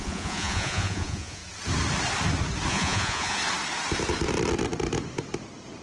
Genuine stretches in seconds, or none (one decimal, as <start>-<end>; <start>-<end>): 1.4-2.7; 3.4-5.8